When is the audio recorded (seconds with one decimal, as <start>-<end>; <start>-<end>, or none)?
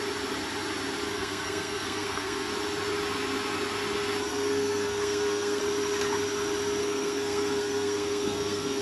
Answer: 0.0-1.1; 2.5-4.3; 5.6-6.8